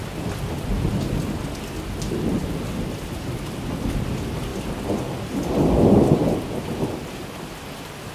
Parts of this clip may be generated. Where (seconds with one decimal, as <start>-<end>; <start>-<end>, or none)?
2.4-3.9